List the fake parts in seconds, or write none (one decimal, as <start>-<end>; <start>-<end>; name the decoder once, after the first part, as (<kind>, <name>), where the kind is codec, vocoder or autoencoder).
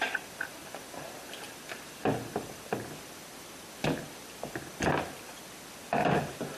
none